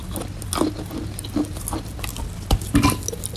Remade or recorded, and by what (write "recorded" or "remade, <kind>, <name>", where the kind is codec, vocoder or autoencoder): recorded